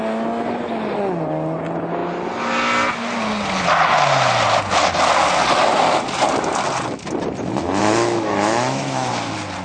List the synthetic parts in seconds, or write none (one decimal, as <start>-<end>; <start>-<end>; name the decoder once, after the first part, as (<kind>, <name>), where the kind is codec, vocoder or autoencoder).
7.8-9.1 (autoencoder, DAC-VAE)